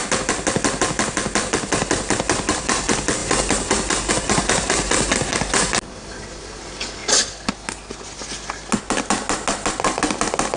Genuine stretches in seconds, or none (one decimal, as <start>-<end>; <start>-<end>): 0.0-10.6